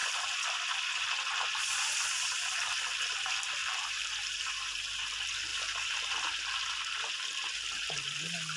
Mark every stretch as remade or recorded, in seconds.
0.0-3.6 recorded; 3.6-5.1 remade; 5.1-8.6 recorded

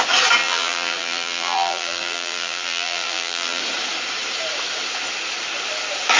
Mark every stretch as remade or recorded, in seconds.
0.0-0.4 recorded; 0.4-3.6 remade; 3.6-6.2 recorded

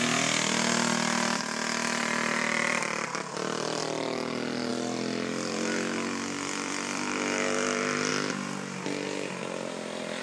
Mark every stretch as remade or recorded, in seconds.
0.0-2.0 recorded; 2.0-3.8 remade; 3.8-4.7 recorded; 4.7-8.1 remade; 8.1-10.2 recorded

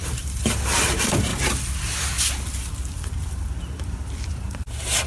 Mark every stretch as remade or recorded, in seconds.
0.0-1.3 remade; 1.3-4.3 recorded; 4.3-5.1 remade

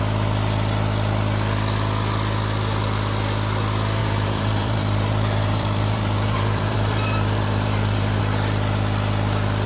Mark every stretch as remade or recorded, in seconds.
0.0-4.0 recorded; 4.0-8.2 remade; 8.2-9.7 recorded

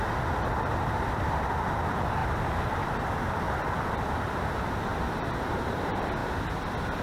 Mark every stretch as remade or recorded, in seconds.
0.0-7.0 recorded

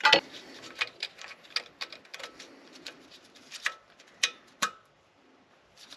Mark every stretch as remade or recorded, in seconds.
0.0-2.1 recorded; 2.1-6.0 remade